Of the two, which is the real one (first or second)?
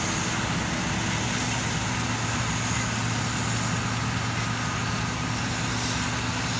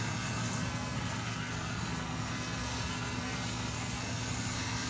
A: first